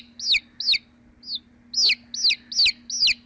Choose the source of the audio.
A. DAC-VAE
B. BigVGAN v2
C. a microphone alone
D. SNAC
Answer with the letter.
C